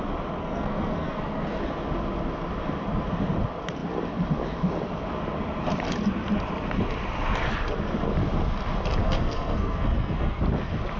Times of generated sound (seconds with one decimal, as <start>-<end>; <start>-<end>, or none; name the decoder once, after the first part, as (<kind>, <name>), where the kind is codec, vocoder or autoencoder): 0.4-1.6 (codec, SNAC); 9.0-10.4